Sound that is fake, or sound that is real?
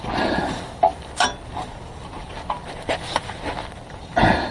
fake